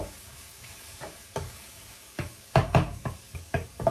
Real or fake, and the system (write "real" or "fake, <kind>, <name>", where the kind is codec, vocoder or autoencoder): fake, codec, DAC